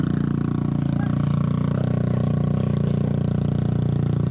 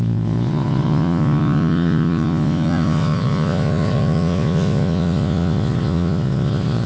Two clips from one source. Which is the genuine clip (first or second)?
first